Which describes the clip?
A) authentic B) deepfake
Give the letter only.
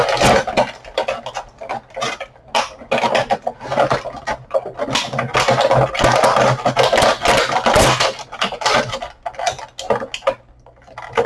A